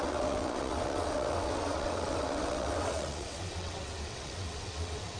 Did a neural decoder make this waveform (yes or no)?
yes